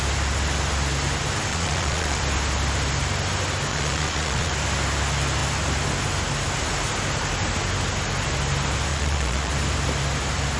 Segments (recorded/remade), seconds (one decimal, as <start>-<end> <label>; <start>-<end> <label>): 0.0-1.5 recorded; 1.5-2.2 remade; 2.2-3.7 recorded; 3.7-4.5 remade; 4.5-8.9 recorded; 8.9-9.5 remade; 9.5-10.6 recorded